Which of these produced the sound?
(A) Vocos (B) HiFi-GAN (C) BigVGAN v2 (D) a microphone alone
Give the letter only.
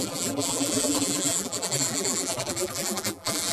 C